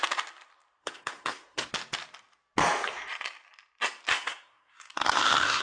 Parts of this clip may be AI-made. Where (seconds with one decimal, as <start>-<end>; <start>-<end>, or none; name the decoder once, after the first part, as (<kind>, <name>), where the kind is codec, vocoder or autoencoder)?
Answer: 0.8-1.7 (codec, SNAC); 4.1-5.6

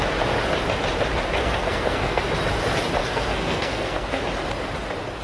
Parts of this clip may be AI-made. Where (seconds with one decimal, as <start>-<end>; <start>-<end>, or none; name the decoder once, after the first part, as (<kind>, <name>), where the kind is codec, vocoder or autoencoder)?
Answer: 1.4-2.2 (codec, SNAC); 3.0-4.2

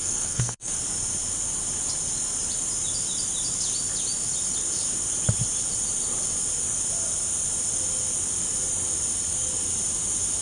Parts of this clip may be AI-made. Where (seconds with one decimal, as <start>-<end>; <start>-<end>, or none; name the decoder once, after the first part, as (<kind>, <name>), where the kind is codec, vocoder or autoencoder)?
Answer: 0.0-0.7 (codec, SNAC)

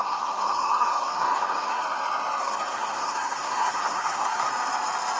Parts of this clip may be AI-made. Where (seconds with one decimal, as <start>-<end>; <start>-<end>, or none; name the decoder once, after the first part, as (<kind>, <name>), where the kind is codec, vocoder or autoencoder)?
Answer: 0.0-1.8 (codec, SNAC); 2.4-4.5

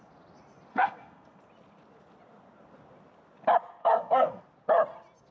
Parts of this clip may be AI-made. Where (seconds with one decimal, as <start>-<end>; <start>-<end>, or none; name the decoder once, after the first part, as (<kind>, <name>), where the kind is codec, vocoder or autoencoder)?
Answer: 0.7-1.4 (codec, SNAC); 3.8-4.4

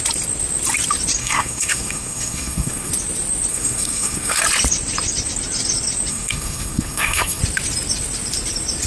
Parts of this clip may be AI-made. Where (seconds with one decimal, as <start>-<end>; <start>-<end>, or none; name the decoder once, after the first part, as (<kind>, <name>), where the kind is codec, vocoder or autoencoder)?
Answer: 1.2-2.9 (codec, SNAC); 3.5-4.4; 6.1-7.4